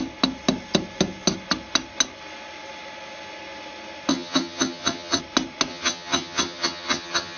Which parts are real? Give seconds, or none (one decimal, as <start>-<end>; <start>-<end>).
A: 0.0-4.1; 5.2-5.7